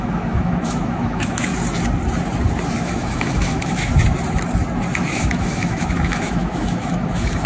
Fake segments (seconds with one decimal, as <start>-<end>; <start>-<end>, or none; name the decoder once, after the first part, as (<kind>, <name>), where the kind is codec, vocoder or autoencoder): 0.0-1.5 (autoencoder, DAC-VAE); 2.8-3.9; 5.0-7.5